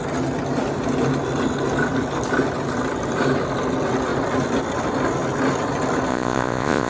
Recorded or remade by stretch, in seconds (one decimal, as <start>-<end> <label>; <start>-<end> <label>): 0.0-6.1 recorded; 6.1-6.9 remade